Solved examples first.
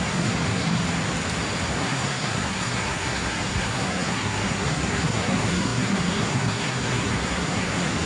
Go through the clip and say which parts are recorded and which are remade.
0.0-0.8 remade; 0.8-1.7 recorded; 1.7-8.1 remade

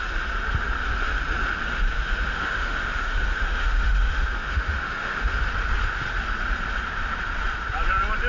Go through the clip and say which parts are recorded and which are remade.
0.0-1.7 recorded; 1.7-5.4 remade; 5.4-8.3 recorded